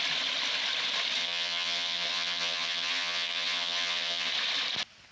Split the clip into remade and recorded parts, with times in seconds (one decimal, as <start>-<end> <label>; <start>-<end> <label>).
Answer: 0.0-1.2 recorded; 1.2-4.3 remade; 4.3-5.1 recorded